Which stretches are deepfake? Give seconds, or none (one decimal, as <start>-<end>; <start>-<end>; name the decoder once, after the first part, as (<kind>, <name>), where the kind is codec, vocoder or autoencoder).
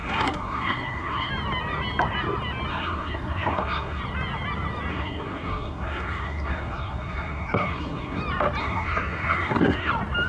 0.0-1.3 (codec, SNAC); 2.7-4.0; 4.9-8.2; 8.6-9.9